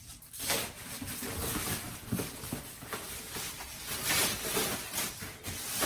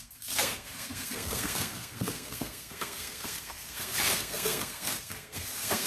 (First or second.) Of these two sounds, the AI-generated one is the second